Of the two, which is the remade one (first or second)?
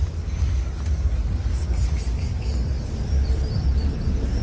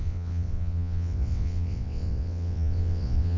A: second